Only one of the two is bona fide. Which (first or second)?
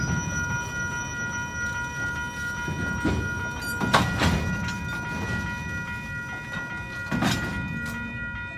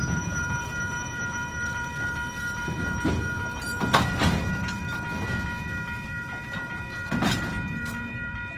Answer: first